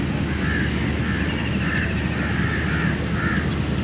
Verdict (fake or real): real